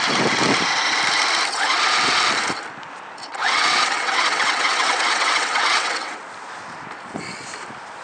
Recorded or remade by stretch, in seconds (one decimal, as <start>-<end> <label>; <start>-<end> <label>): 0.0-3.3 recorded; 3.3-6.2 remade; 6.2-8.0 recorded